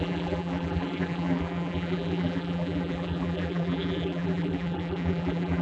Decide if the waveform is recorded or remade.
remade